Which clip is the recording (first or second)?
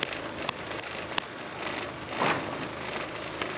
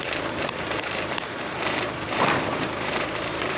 first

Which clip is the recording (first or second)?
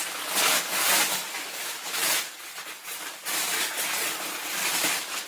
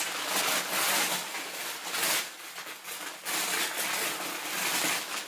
second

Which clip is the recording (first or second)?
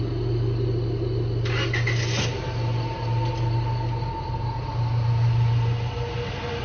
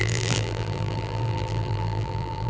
first